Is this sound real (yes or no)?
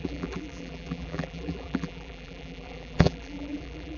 no